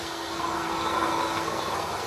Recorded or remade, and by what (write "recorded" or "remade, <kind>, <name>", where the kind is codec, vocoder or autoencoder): remade, codec, SNAC